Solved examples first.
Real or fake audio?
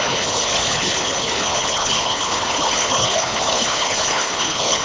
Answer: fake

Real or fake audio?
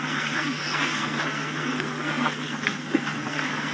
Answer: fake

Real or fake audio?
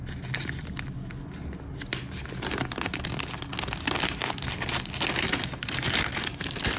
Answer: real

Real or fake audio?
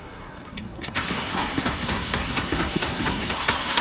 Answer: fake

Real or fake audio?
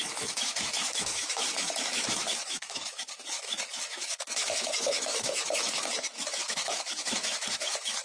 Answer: fake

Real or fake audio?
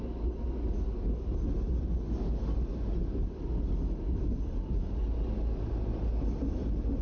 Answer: real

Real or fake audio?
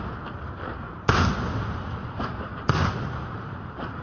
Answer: real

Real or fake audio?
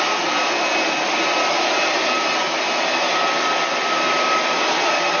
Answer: real